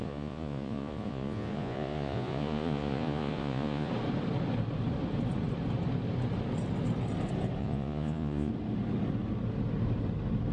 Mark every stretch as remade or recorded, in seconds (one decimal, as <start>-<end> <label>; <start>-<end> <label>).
0.0-3.9 remade; 3.9-7.6 recorded; 7.6-8.5 remade; 8.5-10.5 recorded